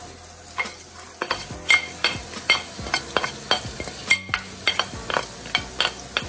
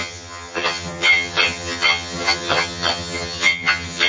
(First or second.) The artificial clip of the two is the second